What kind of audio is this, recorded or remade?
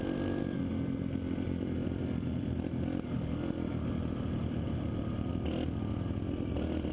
recorded